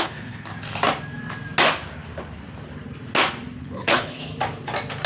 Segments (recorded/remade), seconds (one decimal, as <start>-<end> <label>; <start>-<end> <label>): 0.0-0.5 remade; 0.5-3.6 recorded; 3.6-4.2 remade; 4.2-5.1 recorded